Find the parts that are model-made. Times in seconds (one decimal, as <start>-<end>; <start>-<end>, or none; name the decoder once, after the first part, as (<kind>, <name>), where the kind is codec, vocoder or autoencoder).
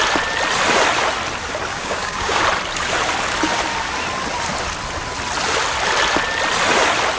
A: 1.7-2.4 (codec, DAC)